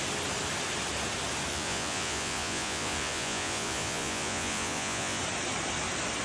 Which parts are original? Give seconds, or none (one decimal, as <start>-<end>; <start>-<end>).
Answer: 0.0-1.5; 5.2-6.2